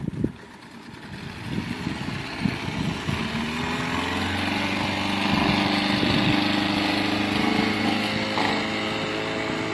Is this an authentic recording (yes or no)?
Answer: yes